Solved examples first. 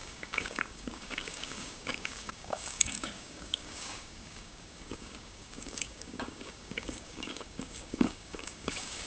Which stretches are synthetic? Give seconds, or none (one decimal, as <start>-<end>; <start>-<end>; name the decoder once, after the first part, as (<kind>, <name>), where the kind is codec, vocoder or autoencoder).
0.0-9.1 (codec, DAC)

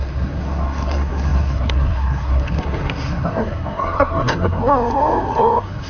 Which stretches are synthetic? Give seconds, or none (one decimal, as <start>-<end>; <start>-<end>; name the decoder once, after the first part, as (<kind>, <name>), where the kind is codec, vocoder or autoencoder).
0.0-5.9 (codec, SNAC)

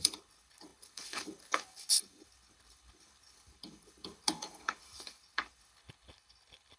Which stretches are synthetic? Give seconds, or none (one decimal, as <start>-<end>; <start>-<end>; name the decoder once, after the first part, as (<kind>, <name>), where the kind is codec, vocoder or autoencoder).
0.0-6.8 (codec, HILCodec)

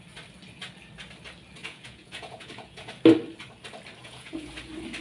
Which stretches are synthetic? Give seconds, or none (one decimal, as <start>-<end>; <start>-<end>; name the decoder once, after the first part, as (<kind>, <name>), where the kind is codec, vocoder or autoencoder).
1.6-2.9 (vocoder, Vocos); 4.0-4.5

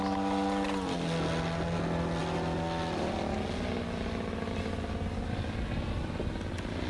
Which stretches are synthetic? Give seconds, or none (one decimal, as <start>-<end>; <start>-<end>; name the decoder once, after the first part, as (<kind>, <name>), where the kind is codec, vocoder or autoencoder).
none